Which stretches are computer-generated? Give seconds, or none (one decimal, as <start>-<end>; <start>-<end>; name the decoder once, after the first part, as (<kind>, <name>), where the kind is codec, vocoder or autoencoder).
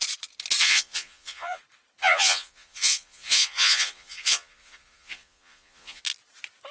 0.6-1.6 (vocoder, Vocos); 2.0-6.0